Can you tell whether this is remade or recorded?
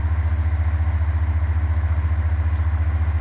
recorded